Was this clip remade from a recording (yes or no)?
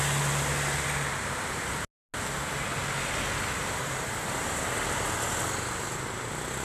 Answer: no